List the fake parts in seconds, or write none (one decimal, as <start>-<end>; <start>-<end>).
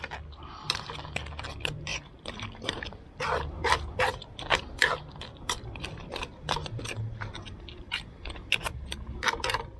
1.9-6.8